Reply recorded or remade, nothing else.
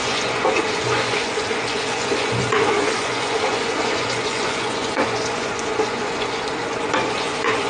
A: remade